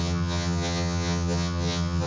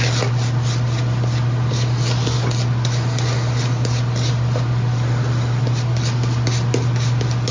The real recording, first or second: second